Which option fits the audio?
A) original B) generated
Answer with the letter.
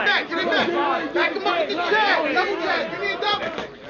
A